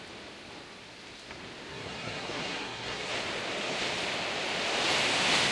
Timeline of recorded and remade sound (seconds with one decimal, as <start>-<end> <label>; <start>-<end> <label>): 0.0-1.7 recorded; 1.7-3.1 remade; 3.1-5.5 recorded